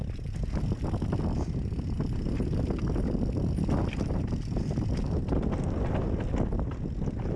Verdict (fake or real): real